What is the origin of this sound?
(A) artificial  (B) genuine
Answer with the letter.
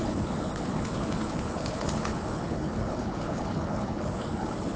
A